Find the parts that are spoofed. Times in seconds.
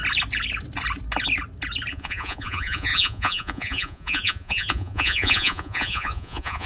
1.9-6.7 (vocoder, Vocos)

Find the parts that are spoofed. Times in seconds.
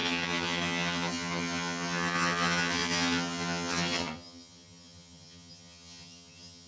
0.0-6.7 (vocoder, HiFi-GAN)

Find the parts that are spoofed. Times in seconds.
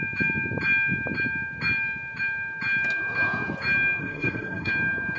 4.0-4.7 (codec, SNAC)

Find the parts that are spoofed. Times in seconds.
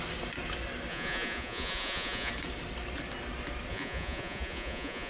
0.9-2.3 (vocoder, Vocos); 3.7-5.1